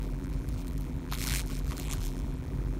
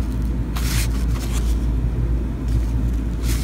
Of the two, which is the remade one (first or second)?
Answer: first